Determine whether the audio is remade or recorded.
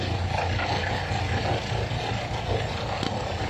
recorded